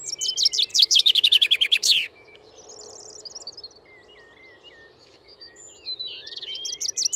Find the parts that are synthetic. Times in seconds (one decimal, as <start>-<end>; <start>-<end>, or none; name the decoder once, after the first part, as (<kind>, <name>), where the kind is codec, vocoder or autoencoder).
0.7-2.5 (autoencoder, DAC-VAE); 5.0-6.6